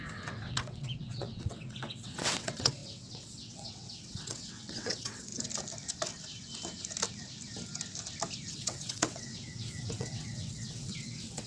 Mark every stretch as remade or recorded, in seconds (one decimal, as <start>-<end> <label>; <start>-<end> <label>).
0.0-5.3 remade; 5.3-8.5 recorded; 8.5-11.5 remade